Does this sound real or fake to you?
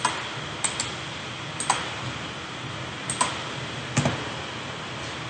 real